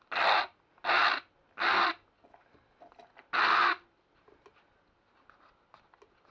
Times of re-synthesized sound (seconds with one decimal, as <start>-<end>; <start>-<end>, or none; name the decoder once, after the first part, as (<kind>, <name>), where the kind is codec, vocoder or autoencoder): none